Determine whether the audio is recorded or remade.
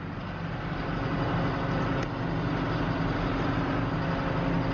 recorded